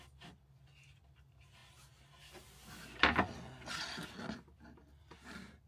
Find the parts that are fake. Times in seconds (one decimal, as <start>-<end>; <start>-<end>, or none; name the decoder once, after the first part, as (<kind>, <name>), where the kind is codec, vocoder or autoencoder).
none